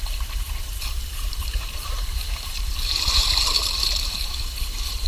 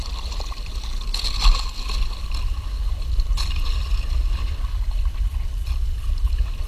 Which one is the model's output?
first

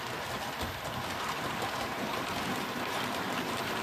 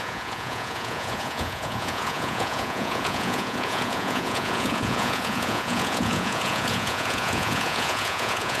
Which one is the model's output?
second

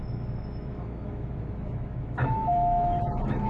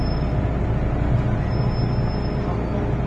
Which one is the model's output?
first